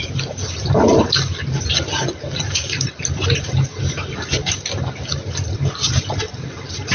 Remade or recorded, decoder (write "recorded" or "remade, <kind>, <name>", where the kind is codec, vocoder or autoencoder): recorded